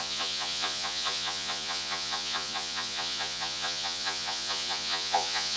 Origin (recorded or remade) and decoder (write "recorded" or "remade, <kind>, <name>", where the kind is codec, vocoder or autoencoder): remade, vocoder, Vocos